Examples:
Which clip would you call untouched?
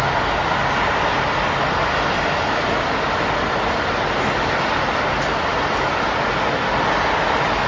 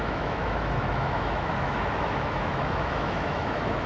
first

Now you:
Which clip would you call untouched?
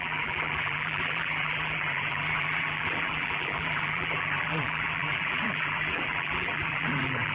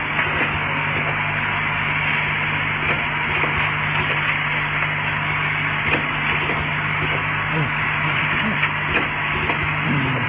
second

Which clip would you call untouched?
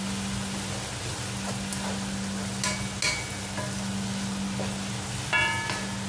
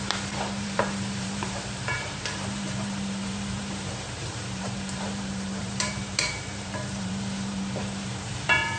first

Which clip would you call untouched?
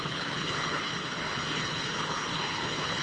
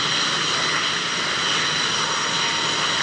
second